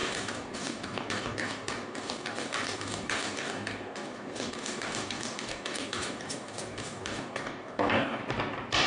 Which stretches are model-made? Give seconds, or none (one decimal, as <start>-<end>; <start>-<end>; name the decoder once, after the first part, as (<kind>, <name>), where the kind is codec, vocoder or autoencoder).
0.0-8.2 (codec, DAC)